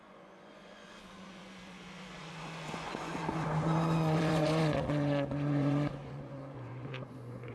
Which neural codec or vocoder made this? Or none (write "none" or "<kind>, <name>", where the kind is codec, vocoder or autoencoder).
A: vocoder, Vocos